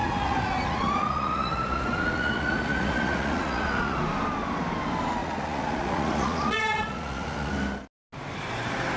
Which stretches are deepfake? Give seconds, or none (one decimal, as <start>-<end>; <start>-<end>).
0.0-4.0; 5.2-7.5

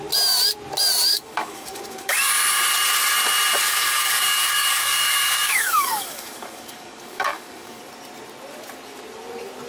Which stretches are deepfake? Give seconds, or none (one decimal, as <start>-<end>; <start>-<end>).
1.1-2.3; 3.7-7.8

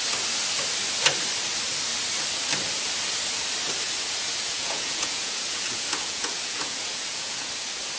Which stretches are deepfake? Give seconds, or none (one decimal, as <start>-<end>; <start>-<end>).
4.2-7.5

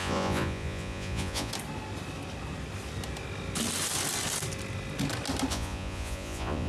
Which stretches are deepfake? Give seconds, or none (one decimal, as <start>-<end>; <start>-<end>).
0.0-1.5; 5.5-6.7